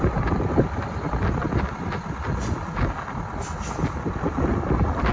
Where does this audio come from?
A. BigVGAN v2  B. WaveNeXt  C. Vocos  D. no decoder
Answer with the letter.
D